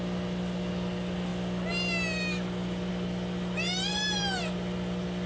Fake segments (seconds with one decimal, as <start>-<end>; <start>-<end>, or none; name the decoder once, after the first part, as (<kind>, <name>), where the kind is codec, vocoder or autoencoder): 3.9-4.4 (vocoder, BigVGAN v2)